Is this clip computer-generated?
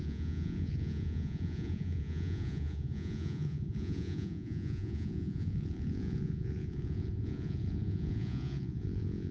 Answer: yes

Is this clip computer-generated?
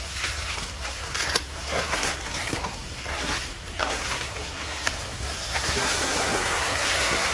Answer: yes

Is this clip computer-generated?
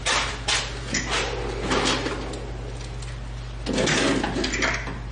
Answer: no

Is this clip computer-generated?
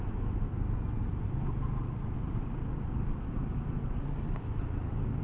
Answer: no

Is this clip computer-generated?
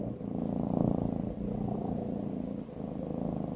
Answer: no